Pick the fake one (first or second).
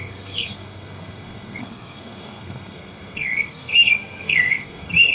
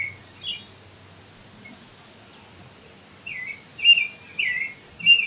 first